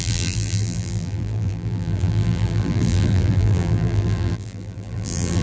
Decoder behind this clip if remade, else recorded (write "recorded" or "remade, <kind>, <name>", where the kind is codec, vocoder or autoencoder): remade, vocoder, BigVGAN v2